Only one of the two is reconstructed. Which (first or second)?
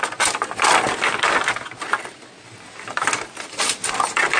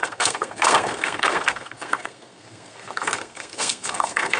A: second